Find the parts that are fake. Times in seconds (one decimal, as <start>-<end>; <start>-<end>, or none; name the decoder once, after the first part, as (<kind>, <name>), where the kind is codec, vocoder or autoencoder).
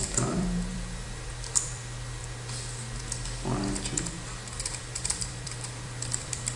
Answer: 0.0-2.2 (vocoder, BigVGAN v2); 4.4-6.6